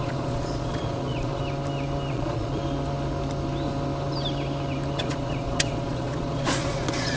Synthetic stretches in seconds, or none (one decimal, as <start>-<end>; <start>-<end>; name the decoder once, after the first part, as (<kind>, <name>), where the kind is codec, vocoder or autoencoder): 0.0-1.4 (vocoder, Vocos); 2.1-2.6; 5.0-7.2